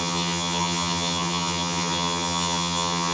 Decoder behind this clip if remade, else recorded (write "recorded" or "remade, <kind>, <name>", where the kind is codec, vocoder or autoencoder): remade, vocoder, HiFi-GAN